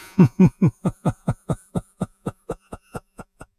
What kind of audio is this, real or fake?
fake